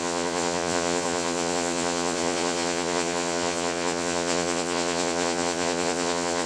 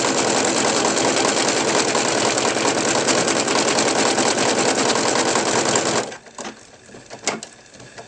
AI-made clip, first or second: first